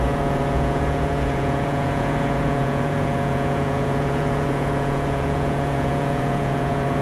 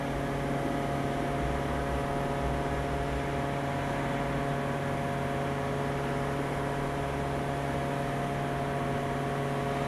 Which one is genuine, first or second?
second